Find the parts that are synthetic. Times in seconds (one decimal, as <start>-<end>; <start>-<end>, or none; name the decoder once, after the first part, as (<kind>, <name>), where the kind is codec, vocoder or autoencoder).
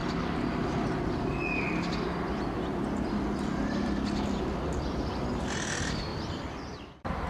6.1-7.3 (vocoder, BigVGAN v2)